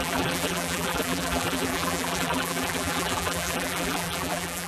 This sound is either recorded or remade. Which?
remade